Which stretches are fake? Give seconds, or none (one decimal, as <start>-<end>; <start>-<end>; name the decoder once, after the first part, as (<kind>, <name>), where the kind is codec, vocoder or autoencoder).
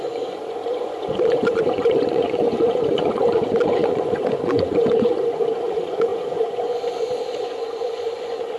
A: 0.0-8.6 (vocoder, Vocos)